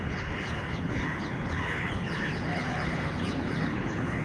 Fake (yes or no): yes